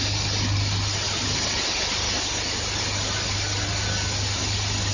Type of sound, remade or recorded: recorded